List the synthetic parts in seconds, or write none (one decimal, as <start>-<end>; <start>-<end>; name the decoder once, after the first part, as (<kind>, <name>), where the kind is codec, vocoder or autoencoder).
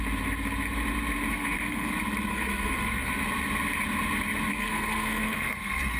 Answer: 1.3-1.9 (codec, SNAC); 2.3-3.1; 4.5-6.0